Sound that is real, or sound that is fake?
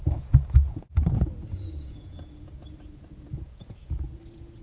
fake